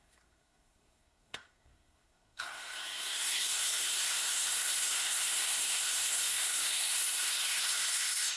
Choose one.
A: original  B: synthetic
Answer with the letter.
B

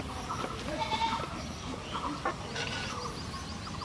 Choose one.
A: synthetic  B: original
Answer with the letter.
A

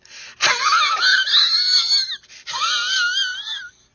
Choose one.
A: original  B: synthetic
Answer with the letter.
A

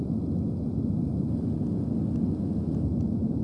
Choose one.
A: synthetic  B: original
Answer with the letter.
B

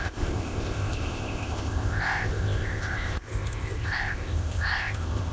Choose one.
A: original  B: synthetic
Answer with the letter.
B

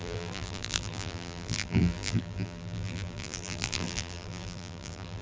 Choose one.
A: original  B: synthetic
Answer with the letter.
B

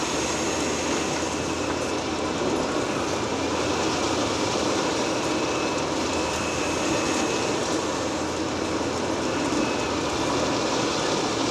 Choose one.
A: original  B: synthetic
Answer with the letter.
A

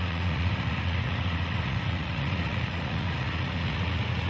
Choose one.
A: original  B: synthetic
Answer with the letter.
B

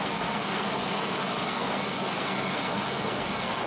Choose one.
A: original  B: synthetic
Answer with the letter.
B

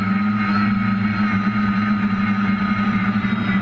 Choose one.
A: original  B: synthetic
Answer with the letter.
B